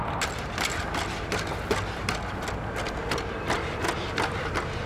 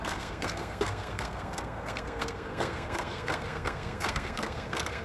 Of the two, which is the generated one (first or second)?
second